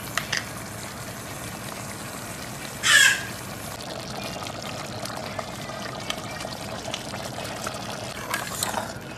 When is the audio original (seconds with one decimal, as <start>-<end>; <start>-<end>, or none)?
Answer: 0.0-5.2; 7.8-9.2